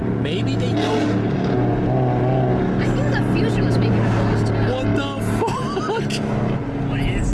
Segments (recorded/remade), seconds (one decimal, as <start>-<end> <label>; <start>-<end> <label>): 0.0-7.3 recorded